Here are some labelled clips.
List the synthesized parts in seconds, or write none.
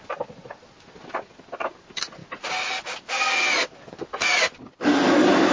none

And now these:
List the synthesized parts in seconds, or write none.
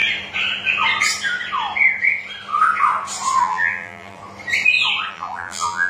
3.4-4.2 (vocoder, BigVGAN v2); 5.1-5.9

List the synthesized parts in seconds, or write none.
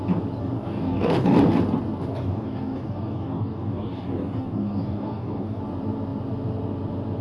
0.4-1.4 (codec, DAC); 2.1-5.6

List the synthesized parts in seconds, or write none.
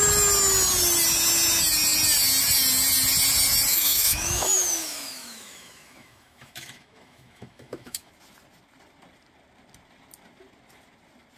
3.7-8.1 (autoencoder, DAC-VAE)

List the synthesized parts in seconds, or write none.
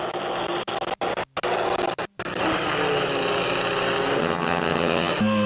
4.2-5.1 (vocoder, HiFi-GAN)